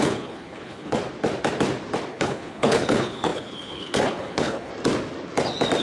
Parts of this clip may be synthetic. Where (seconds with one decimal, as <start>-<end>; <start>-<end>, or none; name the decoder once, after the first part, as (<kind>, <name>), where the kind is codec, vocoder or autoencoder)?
0.0-1.0 (codec, HILCodec); 2.1-4.7